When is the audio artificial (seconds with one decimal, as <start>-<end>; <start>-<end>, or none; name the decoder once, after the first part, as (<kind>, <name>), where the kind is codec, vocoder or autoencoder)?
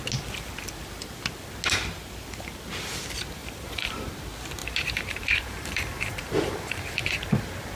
3.4-4.1 (vocoder, BigVGAN v2); 4.6-7.3